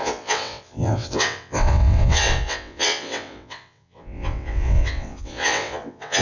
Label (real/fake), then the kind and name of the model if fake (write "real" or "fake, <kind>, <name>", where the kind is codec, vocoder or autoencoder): fake, vocoder, WaveNeXt